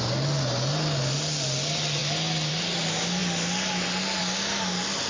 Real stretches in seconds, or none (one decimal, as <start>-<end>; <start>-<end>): 0.0-5.1